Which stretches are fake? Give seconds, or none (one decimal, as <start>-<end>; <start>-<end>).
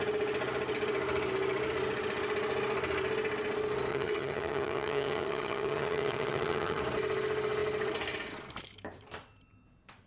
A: 3.9-6.8